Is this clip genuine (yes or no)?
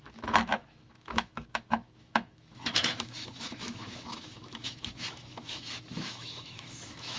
no